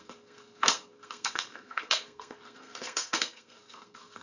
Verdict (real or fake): fake